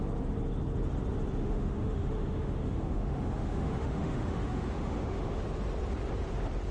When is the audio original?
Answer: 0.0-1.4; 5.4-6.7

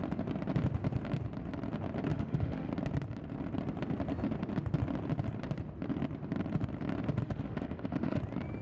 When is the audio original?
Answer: 0.0-2.1; 2.7-7.2; 8.2-8.6

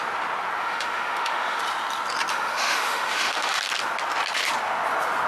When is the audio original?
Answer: 0.0-0.6; 1.6-2.3; 3.6-5.3